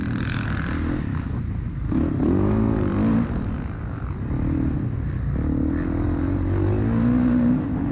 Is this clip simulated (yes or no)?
no